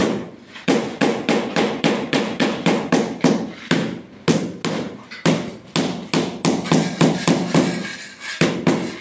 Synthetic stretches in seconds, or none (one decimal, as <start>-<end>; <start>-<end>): 0.0-2.9